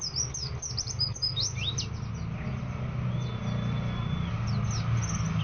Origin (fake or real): real